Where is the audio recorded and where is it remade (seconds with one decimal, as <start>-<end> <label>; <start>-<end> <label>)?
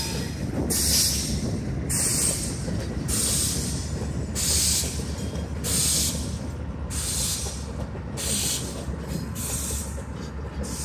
0.0-2.1 recorded; 2.1-3.3 remade; 3.3-10.8 recorded